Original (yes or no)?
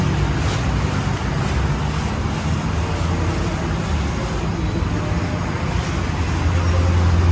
yes